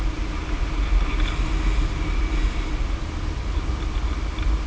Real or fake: real